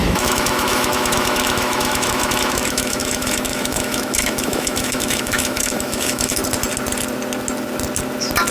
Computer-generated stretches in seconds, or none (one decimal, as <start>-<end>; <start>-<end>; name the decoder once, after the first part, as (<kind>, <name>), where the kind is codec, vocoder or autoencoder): 0.0-6.4 (autoencoder, DAC-VAE)